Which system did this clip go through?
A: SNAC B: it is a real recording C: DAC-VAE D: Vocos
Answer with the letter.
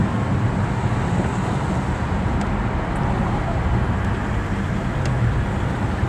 B